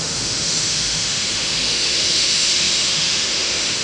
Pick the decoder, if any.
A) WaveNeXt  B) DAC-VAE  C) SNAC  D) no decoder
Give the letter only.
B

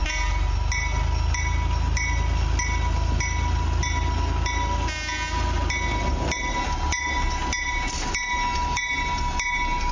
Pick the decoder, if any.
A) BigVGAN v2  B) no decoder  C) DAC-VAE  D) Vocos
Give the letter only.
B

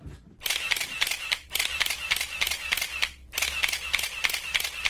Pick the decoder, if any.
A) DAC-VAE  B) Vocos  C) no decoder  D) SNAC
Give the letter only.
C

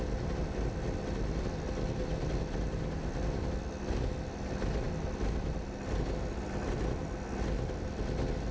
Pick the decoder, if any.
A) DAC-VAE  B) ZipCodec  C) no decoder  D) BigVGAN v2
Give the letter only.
C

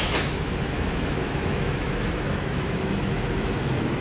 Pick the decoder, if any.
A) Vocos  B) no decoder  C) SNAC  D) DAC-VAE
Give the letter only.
D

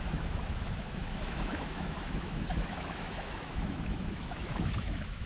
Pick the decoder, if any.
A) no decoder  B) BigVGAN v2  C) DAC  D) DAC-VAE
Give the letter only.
D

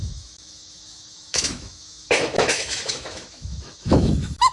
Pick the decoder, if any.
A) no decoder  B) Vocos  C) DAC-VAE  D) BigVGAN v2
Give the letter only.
C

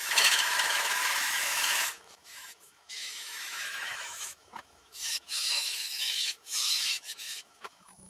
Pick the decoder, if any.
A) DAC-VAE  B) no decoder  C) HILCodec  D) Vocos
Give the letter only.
A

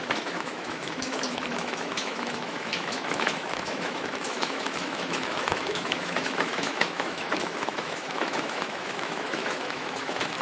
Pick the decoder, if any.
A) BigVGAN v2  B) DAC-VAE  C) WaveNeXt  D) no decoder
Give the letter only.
B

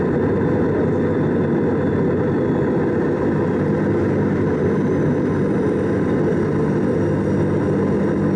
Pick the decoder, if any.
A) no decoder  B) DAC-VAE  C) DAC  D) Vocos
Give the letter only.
A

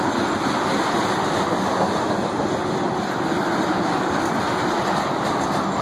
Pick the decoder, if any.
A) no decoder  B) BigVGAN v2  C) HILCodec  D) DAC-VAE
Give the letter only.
A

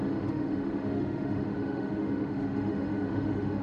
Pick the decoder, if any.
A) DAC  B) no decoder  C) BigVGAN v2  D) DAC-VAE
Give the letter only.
D